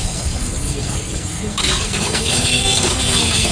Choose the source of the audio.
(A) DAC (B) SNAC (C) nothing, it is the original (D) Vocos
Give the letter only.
B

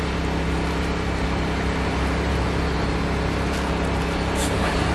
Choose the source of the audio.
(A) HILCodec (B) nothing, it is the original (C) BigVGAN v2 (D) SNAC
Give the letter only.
B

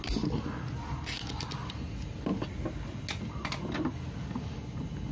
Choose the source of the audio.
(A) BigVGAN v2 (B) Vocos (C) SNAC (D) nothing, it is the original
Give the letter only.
D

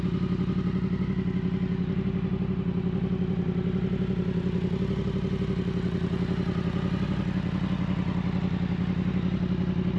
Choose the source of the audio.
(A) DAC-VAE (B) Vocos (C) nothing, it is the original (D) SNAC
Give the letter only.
C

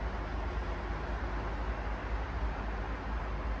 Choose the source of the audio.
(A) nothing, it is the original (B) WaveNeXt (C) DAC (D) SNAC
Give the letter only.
A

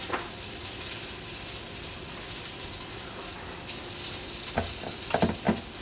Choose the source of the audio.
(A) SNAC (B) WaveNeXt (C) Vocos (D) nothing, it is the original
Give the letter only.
D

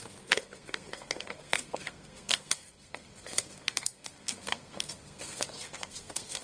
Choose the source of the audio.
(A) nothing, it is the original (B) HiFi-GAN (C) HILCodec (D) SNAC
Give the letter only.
D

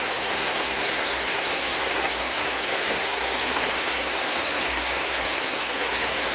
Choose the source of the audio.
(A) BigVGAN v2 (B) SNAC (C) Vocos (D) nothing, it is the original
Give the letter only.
B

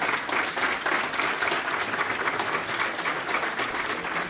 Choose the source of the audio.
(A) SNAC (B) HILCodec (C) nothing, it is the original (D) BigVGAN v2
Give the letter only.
C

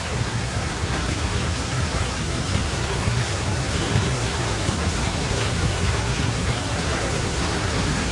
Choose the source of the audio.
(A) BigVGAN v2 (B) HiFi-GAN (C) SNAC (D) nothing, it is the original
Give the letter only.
C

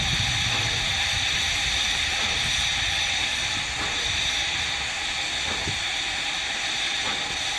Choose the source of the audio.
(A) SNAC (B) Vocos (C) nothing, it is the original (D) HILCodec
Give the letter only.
C